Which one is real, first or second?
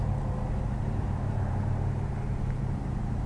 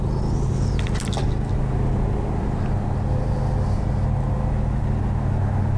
second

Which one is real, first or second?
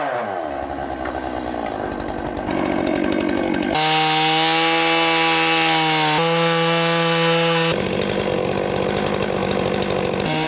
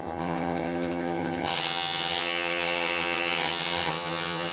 first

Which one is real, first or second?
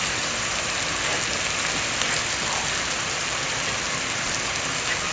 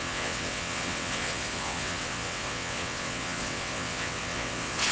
first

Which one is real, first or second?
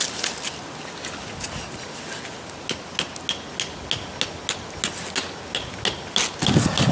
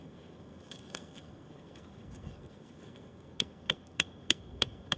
first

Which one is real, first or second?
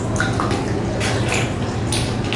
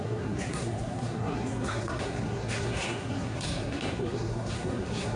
first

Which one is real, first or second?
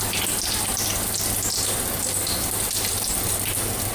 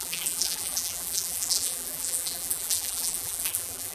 first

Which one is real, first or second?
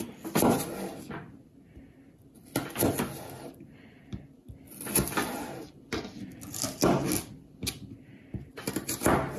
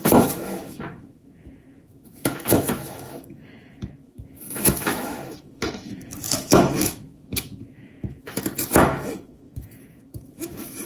first